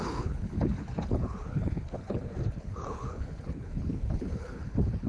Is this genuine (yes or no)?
no